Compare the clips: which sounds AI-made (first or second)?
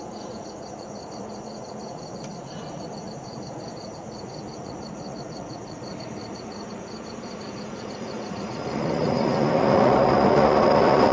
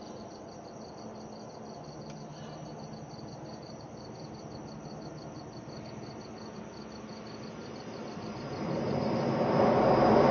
first